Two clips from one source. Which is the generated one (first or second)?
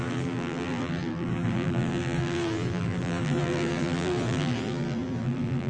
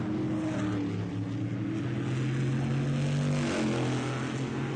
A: first